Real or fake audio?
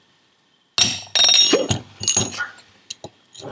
real